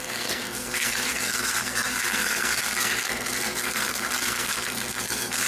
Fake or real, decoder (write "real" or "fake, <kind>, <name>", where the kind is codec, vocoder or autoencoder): fake, codec, SNAC